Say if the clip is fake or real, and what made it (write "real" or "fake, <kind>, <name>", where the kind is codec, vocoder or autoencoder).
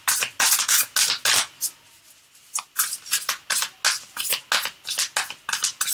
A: real